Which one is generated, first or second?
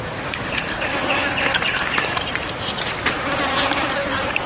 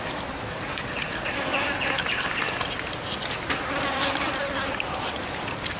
first